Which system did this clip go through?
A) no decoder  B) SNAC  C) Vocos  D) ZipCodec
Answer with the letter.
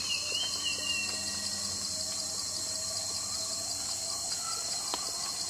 A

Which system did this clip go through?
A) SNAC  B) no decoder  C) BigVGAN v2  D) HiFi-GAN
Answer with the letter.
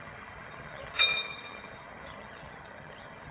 D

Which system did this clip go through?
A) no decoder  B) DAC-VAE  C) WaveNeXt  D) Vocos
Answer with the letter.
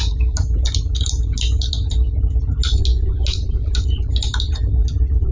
A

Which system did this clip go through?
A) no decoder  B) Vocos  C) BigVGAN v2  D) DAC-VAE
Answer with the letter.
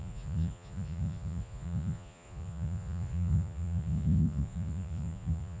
B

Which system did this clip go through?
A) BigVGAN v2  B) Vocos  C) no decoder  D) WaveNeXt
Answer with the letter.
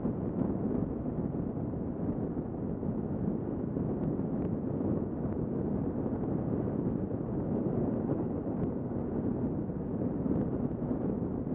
C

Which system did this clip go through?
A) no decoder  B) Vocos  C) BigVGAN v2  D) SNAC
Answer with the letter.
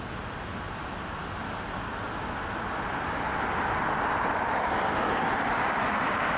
A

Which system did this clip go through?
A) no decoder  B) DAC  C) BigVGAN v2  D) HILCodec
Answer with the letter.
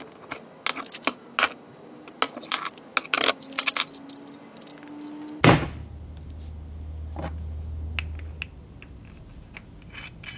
A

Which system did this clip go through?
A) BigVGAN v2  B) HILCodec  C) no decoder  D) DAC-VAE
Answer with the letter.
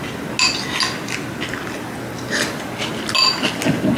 C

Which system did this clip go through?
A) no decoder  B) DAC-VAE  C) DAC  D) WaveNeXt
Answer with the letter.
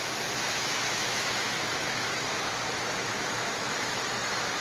B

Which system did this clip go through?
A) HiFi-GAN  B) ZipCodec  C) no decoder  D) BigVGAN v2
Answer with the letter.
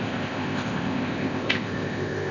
B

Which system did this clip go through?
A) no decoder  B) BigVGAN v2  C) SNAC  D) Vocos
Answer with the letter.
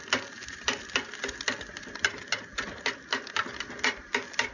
A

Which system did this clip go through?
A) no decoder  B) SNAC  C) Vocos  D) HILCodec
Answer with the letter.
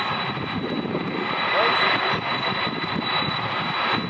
A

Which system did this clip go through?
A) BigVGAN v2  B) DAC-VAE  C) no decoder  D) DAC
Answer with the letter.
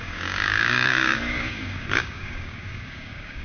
D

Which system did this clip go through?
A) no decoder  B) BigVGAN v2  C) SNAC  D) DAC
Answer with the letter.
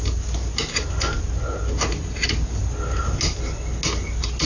A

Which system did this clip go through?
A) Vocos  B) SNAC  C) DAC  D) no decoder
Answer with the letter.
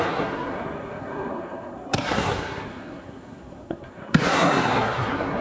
B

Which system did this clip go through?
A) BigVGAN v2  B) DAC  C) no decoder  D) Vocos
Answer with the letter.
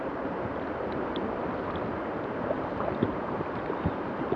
A